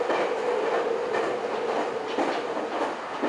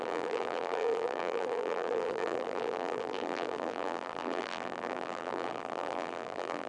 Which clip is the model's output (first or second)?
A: second